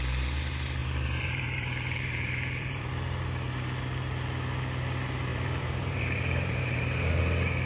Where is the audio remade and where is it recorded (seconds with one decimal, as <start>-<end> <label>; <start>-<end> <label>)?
0.0-0.8 recorded; 0.8-2.9 remade; 2.9-5.3 recorded; 5.3-7.2 remade; 7.2-7.7 recorded